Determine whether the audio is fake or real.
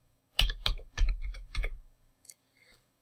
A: fake